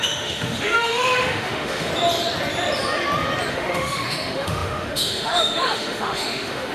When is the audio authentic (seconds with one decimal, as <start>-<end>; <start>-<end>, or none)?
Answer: 1.9-3.5